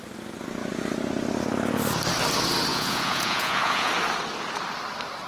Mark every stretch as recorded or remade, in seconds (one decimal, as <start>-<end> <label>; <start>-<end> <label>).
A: 0.0-2.7 recorded; 2.7-3.9 remade; 3.9-5.3 recorded